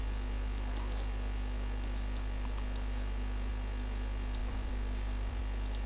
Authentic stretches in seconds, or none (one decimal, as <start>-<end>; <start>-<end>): 0.0-4.4; 5.4-5.9